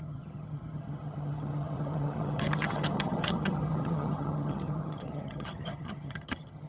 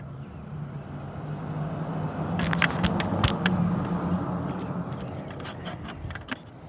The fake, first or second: first